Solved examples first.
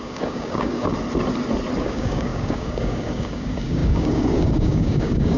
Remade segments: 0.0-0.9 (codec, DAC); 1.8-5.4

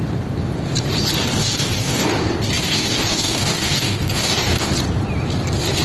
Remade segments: 1.4-2.2 (codec, DAC); 2.6-4.7

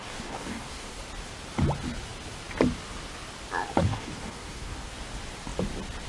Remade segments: 0.0-1.0 (codec, DAC); 3.8-4.9

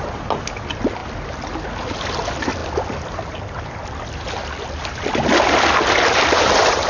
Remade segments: none

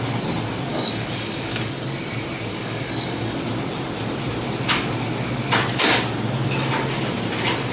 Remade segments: 0.7-1.8 (codec, DAC); 2.5-3.4

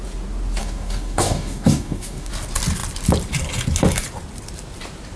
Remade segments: 0.6-2.3 (codec, DAC)